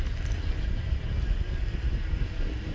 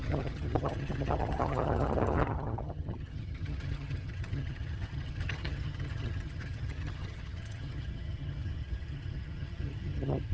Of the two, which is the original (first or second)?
first